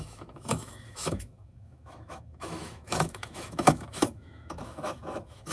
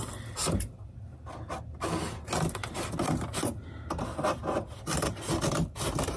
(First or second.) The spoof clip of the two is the first